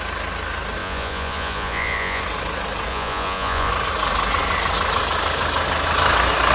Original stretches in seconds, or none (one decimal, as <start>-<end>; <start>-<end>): 0.0-0.8; 2.2-2.9; 3.7-6.5

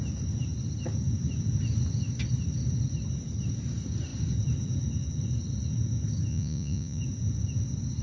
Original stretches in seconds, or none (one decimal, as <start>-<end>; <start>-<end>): 0.0-6.3; 7.0-8.0